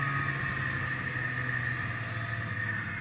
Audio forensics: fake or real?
real